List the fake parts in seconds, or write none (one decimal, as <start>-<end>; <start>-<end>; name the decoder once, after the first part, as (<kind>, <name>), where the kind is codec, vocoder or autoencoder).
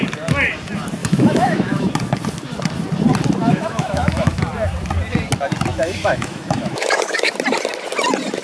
1.0-1.9 (autoencoder, DAC-VAE); 3.4-4.4; 5.7-7.3